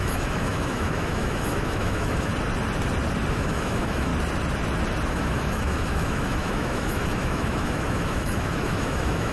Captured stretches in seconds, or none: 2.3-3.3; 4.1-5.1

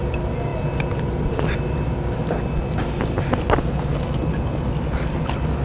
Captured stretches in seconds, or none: 0.0-5.6

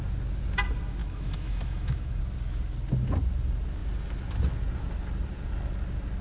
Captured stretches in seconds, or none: 0.0-1.0; 2.2-6.2

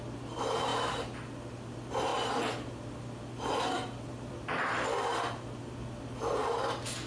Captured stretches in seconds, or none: 0.0-7.1

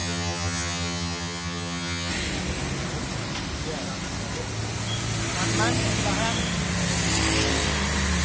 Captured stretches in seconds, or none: 2.1-8.2

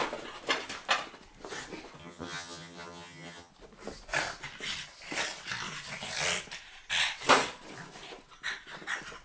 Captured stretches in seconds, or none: 0.0-2.0; 3.5-9.2

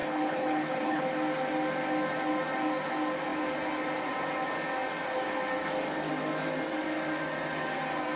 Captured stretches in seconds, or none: 1.0-8.2